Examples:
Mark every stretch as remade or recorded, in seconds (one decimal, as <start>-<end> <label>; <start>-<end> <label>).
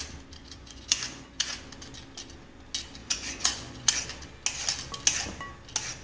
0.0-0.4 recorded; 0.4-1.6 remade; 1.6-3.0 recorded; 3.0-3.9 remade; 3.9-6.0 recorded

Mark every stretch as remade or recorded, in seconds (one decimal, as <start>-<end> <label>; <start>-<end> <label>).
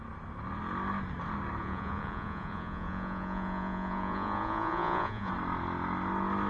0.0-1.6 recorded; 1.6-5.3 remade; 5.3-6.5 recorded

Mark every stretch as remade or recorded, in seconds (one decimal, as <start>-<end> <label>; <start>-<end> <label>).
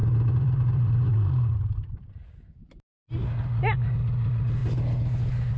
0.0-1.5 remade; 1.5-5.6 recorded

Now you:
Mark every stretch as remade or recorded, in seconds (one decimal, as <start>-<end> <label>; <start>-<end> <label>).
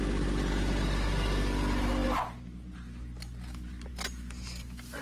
0.0-5.0 recorded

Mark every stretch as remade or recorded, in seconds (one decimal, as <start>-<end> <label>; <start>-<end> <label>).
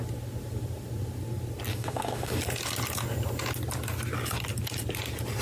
0.0-1.7 recorded; 1.7-2.4 remade; 2.4-5.4 recorded